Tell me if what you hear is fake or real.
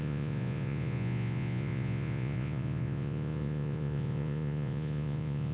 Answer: fake